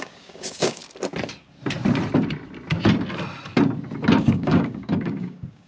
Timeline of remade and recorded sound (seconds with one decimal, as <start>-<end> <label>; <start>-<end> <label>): 0.0-0.8 remade; 0.8-4.2 recorded; 4.2-5.7 remade